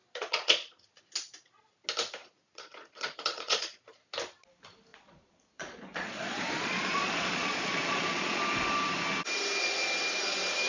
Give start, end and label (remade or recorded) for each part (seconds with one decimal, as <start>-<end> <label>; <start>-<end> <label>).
0.0-1.0 remade; 1.0-2.2 recorded; 2.2-4.0 remade; 4.0-4.9 recorded; 4.9-8.4 remade; 8.4-10.7 recorded